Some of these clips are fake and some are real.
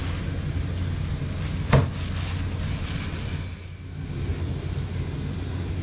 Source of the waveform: real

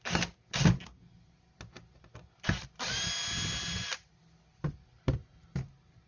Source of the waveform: real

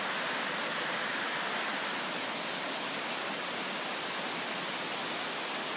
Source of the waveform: real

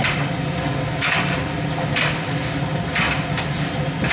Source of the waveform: real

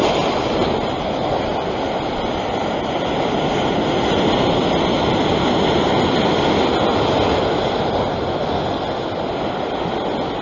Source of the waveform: real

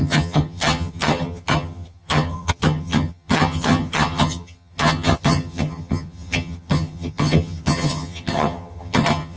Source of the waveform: fake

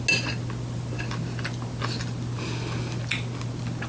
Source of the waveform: real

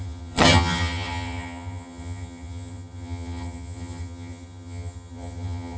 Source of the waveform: fake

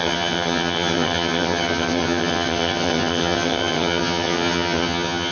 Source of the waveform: fake